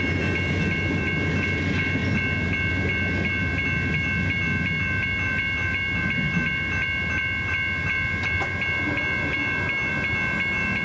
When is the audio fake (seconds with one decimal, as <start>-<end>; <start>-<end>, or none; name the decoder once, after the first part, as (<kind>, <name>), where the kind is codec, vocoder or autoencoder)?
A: none